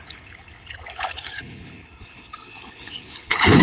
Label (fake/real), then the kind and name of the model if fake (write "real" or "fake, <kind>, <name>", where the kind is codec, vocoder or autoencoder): fake, codec, HILCodec